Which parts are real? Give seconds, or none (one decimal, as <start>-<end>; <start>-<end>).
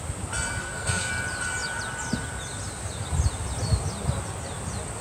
0.0-0.6; 1.1-5.0